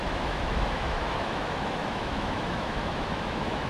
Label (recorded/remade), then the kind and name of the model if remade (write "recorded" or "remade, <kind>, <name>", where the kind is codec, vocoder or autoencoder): remade, autoencoder, DAC-VAE